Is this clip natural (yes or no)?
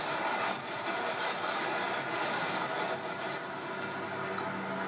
yes